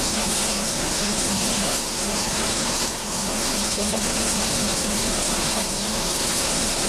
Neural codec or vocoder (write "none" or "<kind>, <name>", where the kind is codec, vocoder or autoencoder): codec, SNAC